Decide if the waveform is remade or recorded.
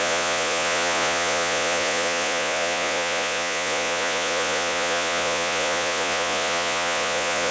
remade